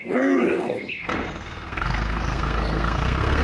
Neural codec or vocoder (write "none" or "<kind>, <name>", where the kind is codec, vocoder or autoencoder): codec, SNAC